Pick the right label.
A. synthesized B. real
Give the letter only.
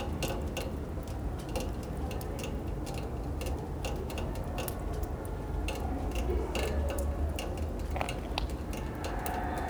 B